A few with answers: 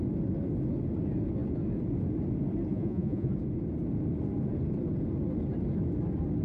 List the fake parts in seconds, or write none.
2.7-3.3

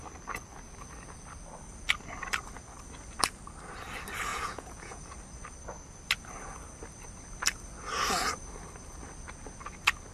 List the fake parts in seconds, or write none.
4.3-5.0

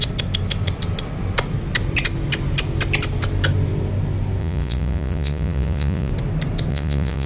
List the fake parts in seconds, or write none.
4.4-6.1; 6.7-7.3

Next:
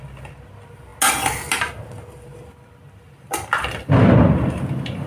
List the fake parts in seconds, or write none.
2.3-5.1